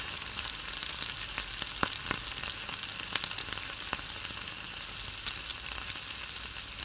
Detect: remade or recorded recorded